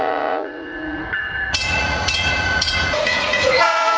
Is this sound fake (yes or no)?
yes